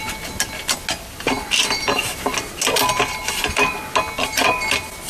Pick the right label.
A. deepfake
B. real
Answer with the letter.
B